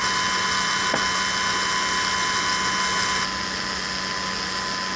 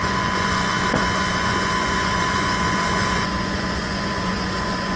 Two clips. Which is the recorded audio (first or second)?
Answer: first